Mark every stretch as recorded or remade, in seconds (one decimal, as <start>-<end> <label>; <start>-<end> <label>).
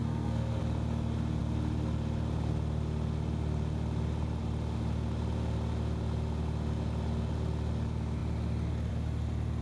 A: 0.0-0.6 remade; 0.6-9.6 recorded